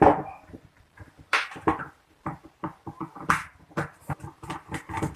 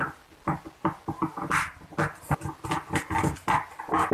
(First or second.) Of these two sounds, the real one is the second